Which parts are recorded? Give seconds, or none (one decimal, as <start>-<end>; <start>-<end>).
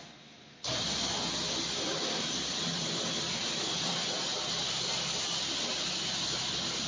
1.0-2.1